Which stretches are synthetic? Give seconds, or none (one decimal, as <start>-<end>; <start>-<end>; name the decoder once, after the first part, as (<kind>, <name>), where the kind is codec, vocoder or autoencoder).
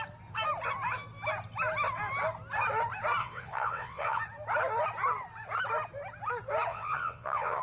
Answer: 3.2-4.2 (vocoder, WaveNeXt); 6.7-7.6